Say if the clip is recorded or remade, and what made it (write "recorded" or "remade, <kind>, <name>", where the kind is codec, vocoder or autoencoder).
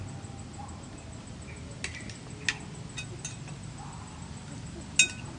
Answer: recorded